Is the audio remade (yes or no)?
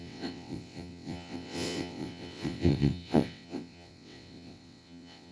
yes